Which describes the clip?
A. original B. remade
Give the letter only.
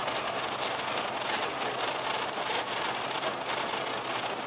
A